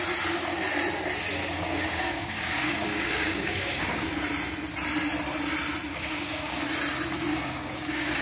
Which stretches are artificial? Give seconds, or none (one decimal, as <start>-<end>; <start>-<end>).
1.4-4.1; 5.9-6.6; 7.3-8.2